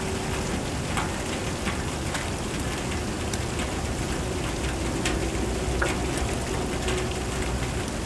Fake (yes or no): no